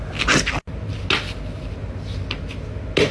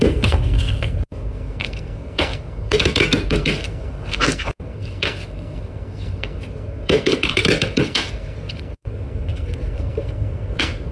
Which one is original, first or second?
first